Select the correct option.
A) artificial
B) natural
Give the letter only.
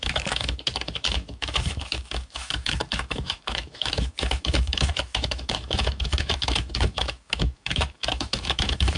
A